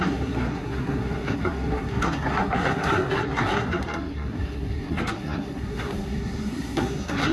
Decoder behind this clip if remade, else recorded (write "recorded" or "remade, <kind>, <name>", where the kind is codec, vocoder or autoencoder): remade, codec, SNAC